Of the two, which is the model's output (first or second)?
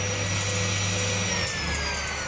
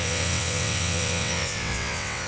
second